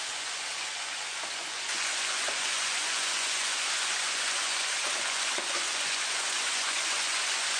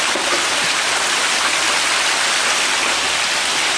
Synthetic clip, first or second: first